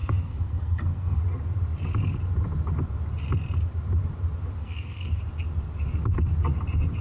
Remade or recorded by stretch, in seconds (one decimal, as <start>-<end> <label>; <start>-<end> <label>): 0.0-1.2 remade; 1.2-4.6 recorded; 4.6-5.2 remade; 5.2-7.0 recorded